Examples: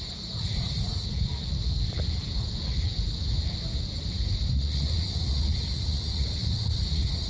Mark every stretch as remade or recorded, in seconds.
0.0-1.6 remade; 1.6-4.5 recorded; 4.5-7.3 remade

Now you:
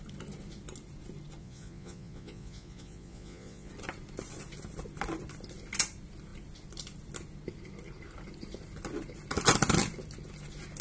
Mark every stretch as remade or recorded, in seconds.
0.0-1.4 recorded; 1.4-3.7 remade; 3.7-10.8 recorded

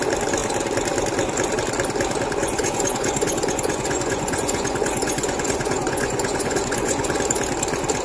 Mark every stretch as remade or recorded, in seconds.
0.0-2.4 recorded; 2.4-7.2 remade; 7.2-8.0 recorded